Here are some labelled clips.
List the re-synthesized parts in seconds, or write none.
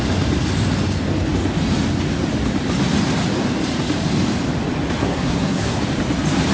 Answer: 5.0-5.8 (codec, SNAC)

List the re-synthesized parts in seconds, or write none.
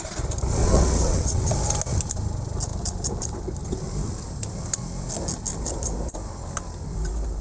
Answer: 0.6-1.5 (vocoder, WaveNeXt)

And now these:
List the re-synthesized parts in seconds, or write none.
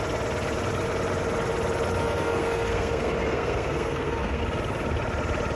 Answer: 2.0-4.4 (codec, SNAC)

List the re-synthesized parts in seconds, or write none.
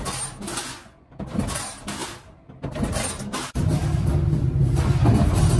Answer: 0.5-1.2 (vocoder, Vocos)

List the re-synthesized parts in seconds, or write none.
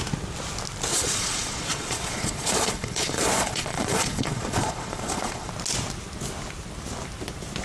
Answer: 0.9-5.5 (vocoder, Vocos)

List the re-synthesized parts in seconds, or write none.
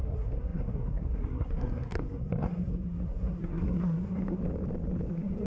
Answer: 0.0-4.4 (codec, SNAC); 5.1-5.5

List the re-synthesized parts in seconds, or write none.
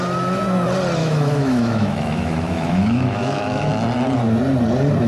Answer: 1.0-3.7 (autoencoder, DAC-VAE)